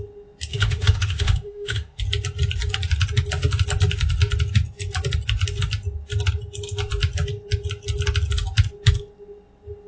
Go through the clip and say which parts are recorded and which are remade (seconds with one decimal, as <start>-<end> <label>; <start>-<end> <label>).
0.0-0.5 recorded; 0.5-2.0 remade; 2.0-9.9 recorded